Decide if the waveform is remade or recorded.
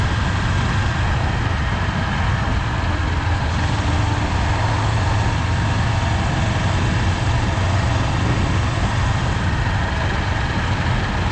recorded